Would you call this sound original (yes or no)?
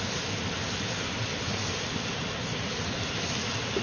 yes